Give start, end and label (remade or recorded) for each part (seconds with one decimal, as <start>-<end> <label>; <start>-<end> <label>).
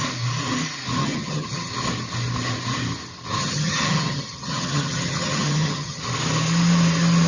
0.0-1.0 recorded; 1.0-1.7 remade; 1.7-3.4 recorded; 3.4-6.0 remade; 6.0-7.3 recorded